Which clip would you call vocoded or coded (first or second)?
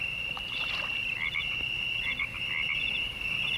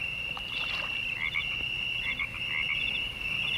first